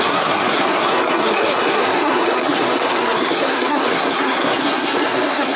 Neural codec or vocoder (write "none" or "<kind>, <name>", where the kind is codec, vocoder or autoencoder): codec, SNAC